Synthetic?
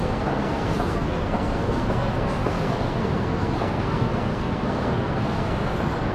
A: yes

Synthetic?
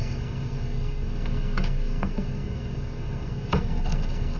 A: yes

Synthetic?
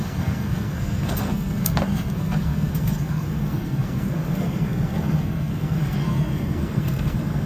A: yes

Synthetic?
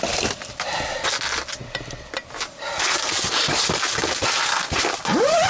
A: no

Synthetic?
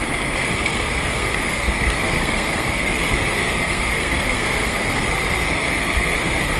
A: yes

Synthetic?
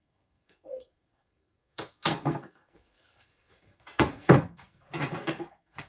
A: yes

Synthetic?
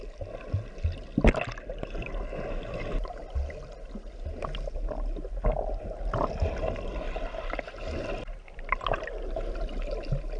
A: no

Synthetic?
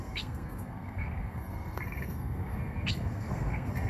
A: yes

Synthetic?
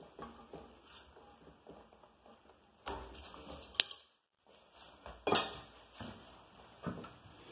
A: no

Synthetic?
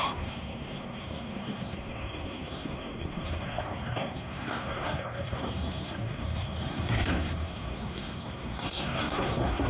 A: yes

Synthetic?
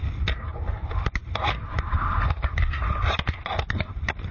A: no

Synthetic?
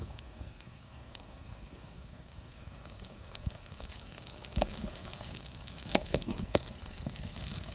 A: yes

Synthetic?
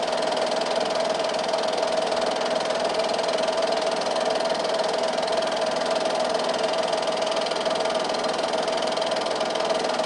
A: no